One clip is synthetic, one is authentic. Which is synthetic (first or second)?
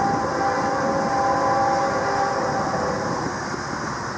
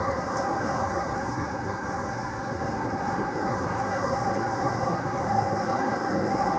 second